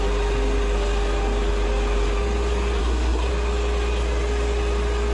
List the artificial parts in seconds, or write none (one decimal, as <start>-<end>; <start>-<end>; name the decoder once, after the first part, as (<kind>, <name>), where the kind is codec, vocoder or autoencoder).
2.8-3.3 (codec, SNAC)